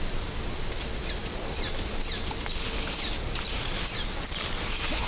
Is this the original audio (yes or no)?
yes